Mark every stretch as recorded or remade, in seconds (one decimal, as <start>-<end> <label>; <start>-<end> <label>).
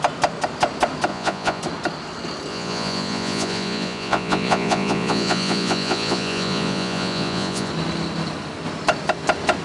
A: 0.0-1.1 recorded; 1.1-1.6 remade; 1.6-2.5 recorded; 2.5-7.7 remade; 7.7-9.6 recorded